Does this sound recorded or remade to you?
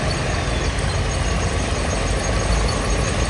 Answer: recorded